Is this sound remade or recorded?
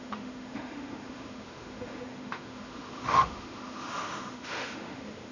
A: remade